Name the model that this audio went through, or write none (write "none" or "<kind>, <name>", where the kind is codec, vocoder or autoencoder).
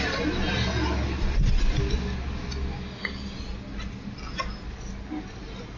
none